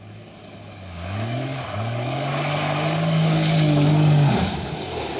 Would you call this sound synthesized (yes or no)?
yes